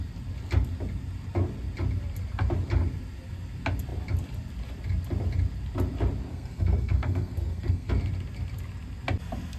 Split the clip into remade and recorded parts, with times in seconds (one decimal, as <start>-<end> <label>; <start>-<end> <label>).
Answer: 0.0-6.3 recorded; 6.3-7.9 remade; 7.9-9.6 recorded